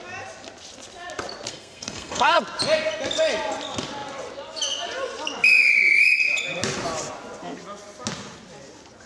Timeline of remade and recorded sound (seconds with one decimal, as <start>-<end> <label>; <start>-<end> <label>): 0.0-1.5 recorded; 1.5-2.4 remade; 2.4-9.1 recorded